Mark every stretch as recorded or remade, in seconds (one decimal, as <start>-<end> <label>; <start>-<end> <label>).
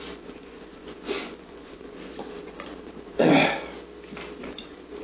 0.0-3.4 remade; 3.4-4.4 recorded; 4.4-5.0 remade